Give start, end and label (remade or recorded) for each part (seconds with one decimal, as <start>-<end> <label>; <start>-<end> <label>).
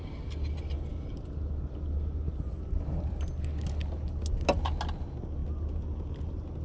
0.0-6.6 recorded